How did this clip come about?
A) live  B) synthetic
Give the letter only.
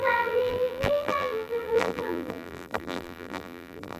B